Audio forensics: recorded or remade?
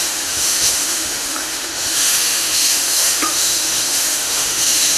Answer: remade